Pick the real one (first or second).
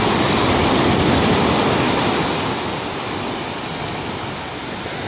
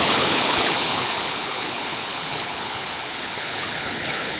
first